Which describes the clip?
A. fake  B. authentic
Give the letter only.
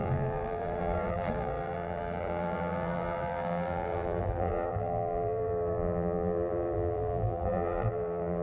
A